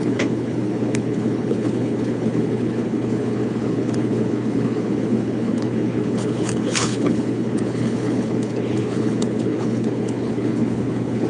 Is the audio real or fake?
fake